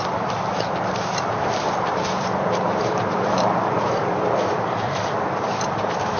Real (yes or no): no